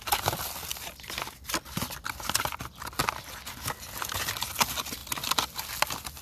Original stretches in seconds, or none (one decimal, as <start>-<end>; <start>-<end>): 0.0-6.2